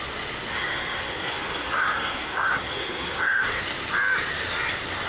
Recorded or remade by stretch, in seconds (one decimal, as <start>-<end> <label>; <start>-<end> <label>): 0.0-0.5 recorded; 0.5-3.6 remade; 3.6-5.1 recorded